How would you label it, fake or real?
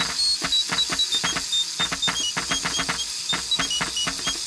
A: real